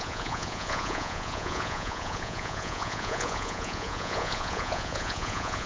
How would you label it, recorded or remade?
remade